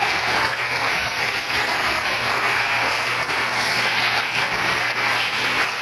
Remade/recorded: remade